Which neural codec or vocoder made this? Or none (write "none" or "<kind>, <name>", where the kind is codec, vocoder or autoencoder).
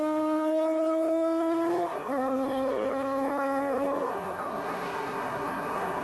codec, SNAC